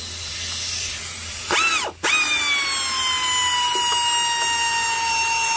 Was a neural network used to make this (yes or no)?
no